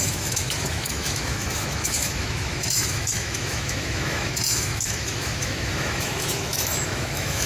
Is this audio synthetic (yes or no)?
yes